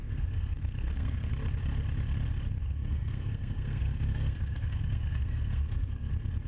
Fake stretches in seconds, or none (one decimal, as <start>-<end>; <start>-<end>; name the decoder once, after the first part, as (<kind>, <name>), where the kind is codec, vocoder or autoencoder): 0.0-1.3 (codec, SNAC); 2.6-6.1